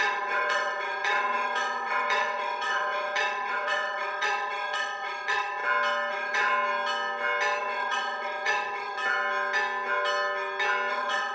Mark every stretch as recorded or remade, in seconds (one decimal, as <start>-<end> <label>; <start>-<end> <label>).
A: 0.0-5.6 remade; 5.6-6.1 recorded; 6.1-6.5 remade; 6.5-7.6 recorded; 7.6-9.0 remade; 9.0-10.9 recorded; 10.9-11.3 remade